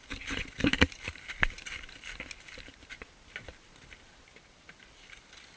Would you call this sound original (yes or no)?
yes